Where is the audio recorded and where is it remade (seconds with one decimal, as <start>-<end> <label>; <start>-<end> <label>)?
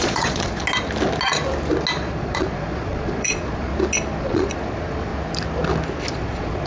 0.0-0.6 remade; 0.6-2.0 recorded; 2.0-3.7 remade; 3.7-4.2 recorded; 4.2-5.1 remade; 5.1-6.1 recorded; 6.1-6.7 remade